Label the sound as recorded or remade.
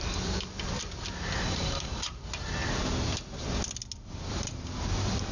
recorded